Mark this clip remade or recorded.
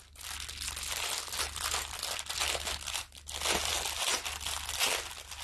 recorded